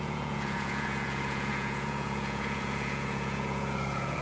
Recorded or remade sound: remade